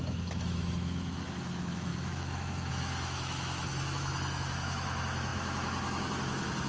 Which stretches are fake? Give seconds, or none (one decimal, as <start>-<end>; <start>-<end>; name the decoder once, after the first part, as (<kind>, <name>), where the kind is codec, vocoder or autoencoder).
0.0-6.7 (autoencoder, DAC-VAE)